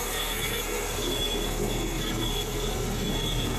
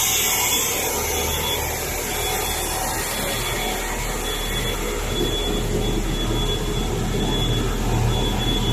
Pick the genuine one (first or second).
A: second